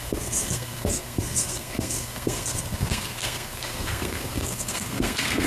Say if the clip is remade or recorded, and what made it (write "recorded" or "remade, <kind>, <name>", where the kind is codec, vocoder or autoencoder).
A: remade, codec, SNAC